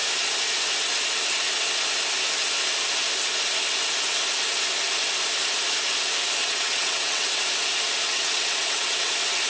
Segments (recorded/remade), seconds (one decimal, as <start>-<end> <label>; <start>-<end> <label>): 0.0-6.4 recorded; 6.4-7.4 remade; 7.4-8.1 recorded; 8.1-9.1 remade; 9.1-9.5 recorded